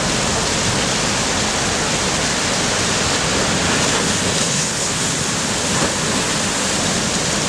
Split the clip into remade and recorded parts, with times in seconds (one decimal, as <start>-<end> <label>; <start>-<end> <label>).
0.0-4.4 recorded; 4.4-5.0 remade; 5.0-7.5 recorded